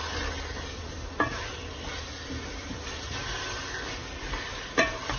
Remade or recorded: remade